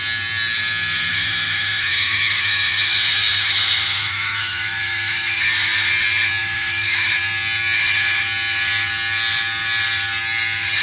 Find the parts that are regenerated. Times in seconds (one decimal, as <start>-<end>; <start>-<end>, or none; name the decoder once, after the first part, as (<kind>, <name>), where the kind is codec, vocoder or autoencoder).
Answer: 1.1-5.4 (autoencoder, DAC-VAE); 6.4-7.1

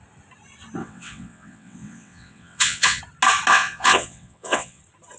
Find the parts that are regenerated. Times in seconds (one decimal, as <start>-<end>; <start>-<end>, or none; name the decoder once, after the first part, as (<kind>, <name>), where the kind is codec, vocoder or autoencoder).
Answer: 0.8-3.0 (vocoder, WaveNeXt); 3.5-4.8

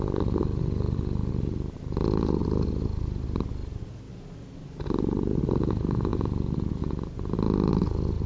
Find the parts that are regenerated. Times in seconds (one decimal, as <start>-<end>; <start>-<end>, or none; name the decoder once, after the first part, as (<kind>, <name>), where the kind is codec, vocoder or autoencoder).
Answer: none